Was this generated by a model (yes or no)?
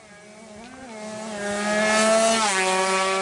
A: no